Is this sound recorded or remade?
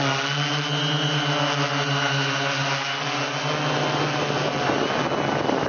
recorded